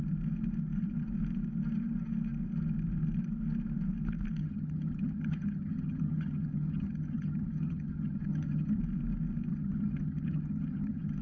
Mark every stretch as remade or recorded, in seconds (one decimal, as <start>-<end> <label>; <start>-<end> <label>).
0.0-4.4 recorded; 4.4-8.8 remade; 8.8-9.5 recorded; 9.5-11.2 remade